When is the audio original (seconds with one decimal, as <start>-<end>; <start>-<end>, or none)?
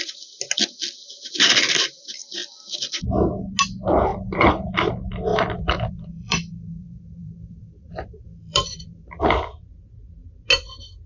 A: 0.0-4.1; 4.7-5.3; 9.2-11.1